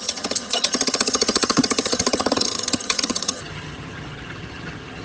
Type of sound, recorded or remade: remade